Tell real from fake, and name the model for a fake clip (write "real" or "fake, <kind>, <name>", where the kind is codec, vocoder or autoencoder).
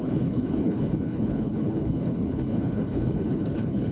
fake, codec, HILCodec